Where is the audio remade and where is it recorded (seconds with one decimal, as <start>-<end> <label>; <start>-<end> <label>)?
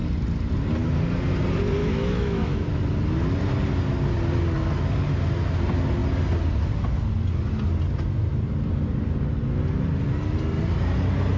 0.0-1.8 recorded; 1.8-2.8 remade; 2.8-11.4 recorded